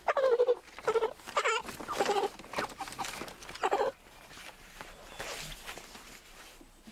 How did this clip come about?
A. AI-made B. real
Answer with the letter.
B